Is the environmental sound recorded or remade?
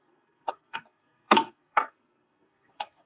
remade